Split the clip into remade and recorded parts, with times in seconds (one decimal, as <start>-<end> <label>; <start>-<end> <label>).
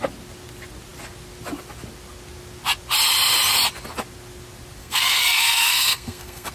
0.0-4.8 recorded; 4.8-6.5 remade